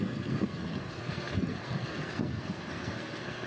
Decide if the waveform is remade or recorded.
remade